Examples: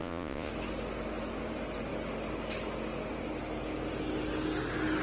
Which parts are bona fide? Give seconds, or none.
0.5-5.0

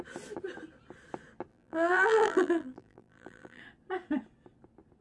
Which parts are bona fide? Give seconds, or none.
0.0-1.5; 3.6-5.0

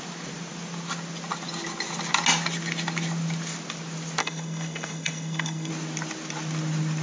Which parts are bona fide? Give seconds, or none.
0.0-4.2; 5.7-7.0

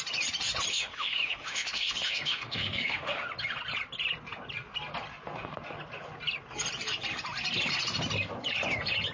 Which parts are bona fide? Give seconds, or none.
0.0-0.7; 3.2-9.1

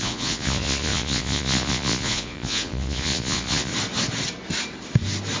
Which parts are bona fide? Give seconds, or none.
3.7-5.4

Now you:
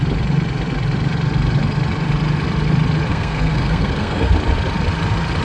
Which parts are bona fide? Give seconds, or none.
0.0-3.1; 4.3-5.4

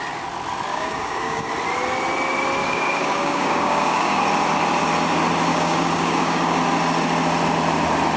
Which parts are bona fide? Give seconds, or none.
0.0-0.7; 1.5-2.6; 4.2-5.5; 6.6-8.2